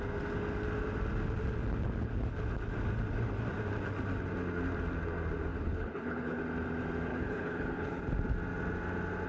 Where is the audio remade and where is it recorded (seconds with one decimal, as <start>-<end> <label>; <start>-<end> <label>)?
0.0-5.5 recorded; 5.5-6.4 remade; 6.4-7.1 recorded; 7.1-8.0 remade; 8.0-9.3 recorded